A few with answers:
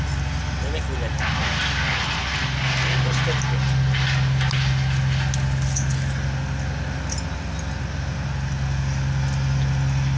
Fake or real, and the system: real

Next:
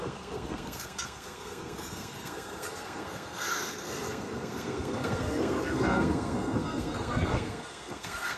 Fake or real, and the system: fake, codec, SNAC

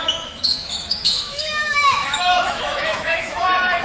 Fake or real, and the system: fake, autoencoder, DAC-VAE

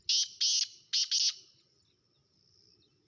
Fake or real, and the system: real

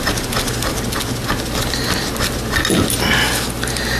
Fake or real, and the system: real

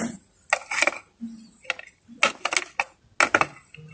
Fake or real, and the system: real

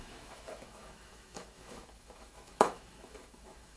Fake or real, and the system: fake, autoencoder, DAC-VAE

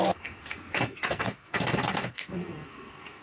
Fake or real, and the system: fake, codec, SNAC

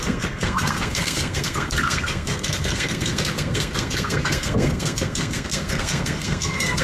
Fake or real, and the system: fake, codec, SNAC